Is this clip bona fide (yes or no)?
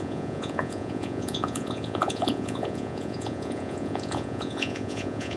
no